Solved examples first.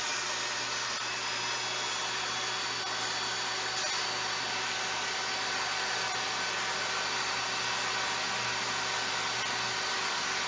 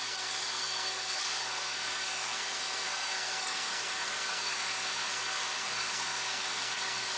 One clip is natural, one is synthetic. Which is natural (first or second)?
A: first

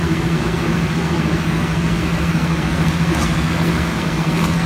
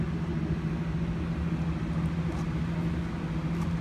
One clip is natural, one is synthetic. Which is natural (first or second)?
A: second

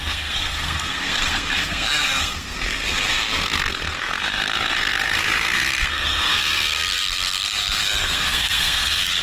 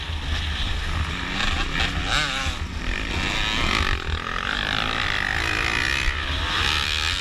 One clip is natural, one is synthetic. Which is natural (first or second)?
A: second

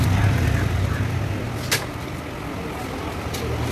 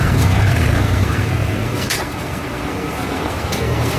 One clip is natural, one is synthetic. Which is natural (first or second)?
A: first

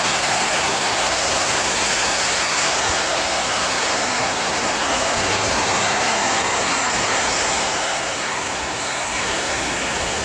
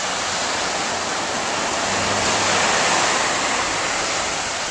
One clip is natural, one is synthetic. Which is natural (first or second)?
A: second